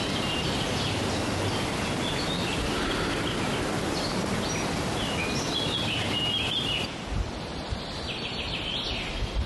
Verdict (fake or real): real